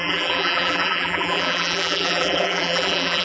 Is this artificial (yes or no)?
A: yes